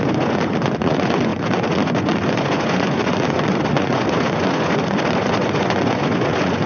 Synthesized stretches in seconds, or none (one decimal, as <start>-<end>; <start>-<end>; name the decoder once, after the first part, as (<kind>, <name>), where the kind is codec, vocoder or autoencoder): 0.0-6.7 (vocoder, Vocos)